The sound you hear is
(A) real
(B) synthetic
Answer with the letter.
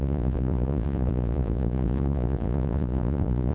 B